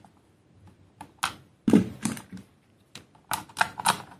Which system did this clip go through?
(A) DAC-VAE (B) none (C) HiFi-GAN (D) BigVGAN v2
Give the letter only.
B